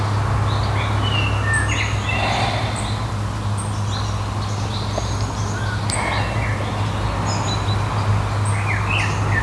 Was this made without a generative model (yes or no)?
yes